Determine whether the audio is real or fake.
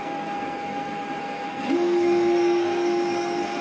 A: fake